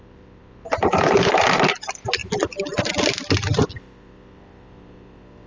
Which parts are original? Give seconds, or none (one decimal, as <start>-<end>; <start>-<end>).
0.0-5.5